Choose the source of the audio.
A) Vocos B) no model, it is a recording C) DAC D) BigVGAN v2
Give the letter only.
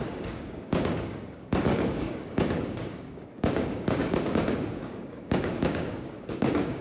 C